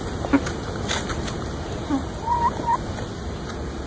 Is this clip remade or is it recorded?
recorded